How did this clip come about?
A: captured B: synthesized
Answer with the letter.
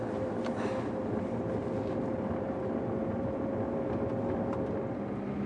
A